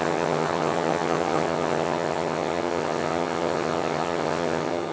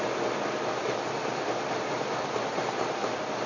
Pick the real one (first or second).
second